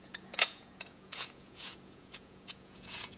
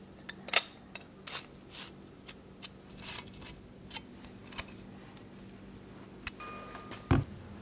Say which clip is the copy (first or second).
first